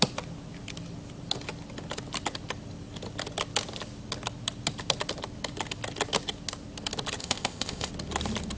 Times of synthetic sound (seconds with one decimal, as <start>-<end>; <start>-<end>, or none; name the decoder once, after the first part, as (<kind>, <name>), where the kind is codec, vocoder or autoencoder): 7.2-7.9 (codec, ZipCodec)